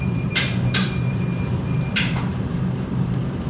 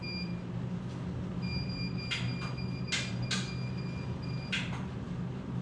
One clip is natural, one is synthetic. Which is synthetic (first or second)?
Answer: first